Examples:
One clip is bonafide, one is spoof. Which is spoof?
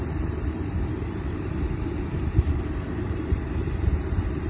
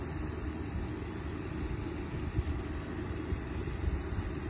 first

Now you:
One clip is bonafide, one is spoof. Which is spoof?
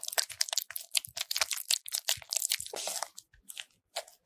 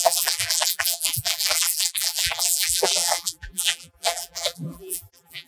second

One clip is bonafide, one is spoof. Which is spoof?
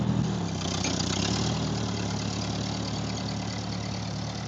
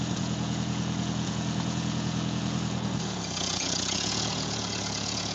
second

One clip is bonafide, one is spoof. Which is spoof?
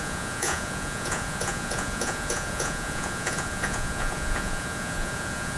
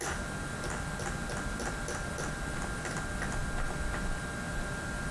first